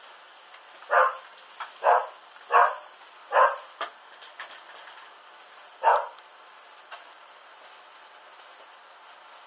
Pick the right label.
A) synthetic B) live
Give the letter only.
B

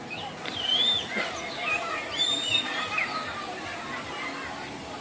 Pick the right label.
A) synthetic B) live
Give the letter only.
B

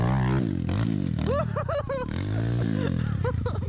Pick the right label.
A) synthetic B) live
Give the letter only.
B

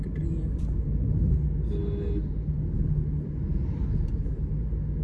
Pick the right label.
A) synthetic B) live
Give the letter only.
B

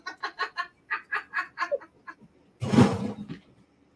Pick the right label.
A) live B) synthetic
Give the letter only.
A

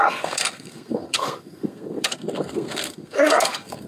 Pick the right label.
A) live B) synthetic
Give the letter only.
B